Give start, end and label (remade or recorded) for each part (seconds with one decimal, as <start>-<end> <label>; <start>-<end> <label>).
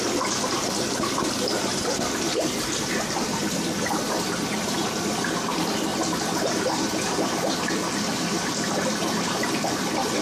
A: 0.0-5.9 remade; 5.9-6.4 recorded; 6.4-10.2 remade